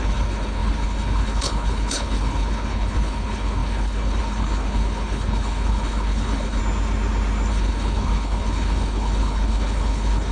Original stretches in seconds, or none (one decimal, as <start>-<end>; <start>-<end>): 6.6-7.5